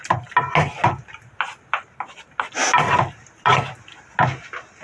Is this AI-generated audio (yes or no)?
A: no